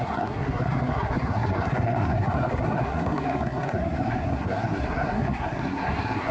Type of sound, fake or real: fake